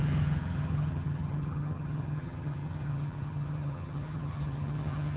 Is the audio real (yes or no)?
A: no